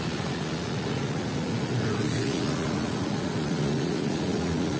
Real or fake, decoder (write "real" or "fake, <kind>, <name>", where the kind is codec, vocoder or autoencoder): fake, vocoder, Vocos